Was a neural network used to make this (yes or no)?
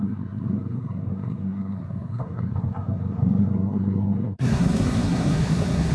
yes